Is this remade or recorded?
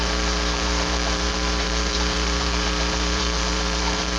remade